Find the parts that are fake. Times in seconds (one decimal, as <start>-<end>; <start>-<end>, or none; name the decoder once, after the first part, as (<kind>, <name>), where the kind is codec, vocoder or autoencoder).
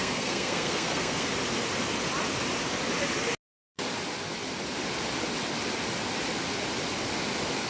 0.0-1.3 (codec, SNAC)